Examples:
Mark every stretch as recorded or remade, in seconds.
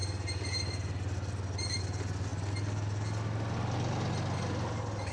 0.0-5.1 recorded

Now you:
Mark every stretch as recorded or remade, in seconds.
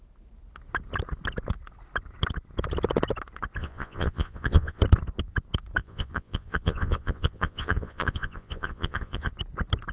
0.0-3.6 recorded; 3.6-4.8 remade; 4.8-5.8 recorded; 5.8-9.3 remade; 9.3-9.9 recorded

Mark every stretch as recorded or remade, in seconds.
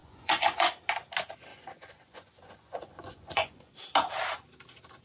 0.0-0.7 remade; 0.7-1.5 recorded; 1.5-3.7 remade; 3.7-5.0 recorded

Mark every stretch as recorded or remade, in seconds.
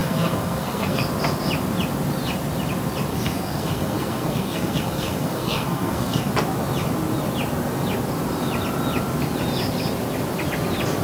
0.0-1.0 remade; 1.0-3.1 recorded; 3.1-6.3 remade; 6.3-11.0 recorded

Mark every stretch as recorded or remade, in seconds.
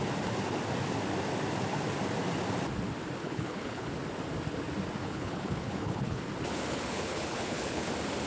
0.0-3.2 recorded; 3.2-3.9 remade; 3.9-5.0 recorded; 5.0-6.2 remade; 6.2-6.7 recorded; 6.7-7.9 remade; 7.9-8.3 recorded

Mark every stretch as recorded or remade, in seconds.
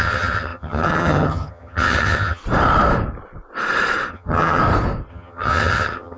0.0-2.4 remade; 2.4-4.1 recorded; 4.1-4.6 remade; 4.6-5.1 recorded; 5.1-6.2 remade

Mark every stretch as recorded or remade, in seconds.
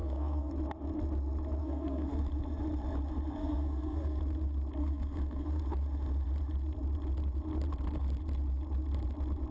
0.0-0.5 remade; 0.5-1.6 recorded; 1.6-2.2 remade; 2.2-3.4 recorded; 3.4-4.2 remade; 4.2-4.8 recorded; 4.8-5.6 remade; 5.6-9.5 recorded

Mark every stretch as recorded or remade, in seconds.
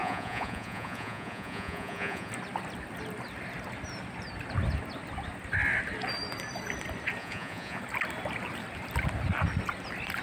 0.0-2.3 remade; 2.3-7.2 recorded; 7.2-7.8 remade; 7.8-10.2 recorded